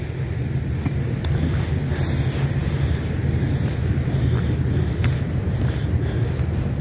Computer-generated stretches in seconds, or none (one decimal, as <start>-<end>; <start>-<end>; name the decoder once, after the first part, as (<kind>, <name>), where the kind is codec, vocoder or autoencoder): none